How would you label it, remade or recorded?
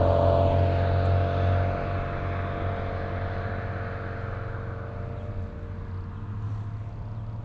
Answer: recorded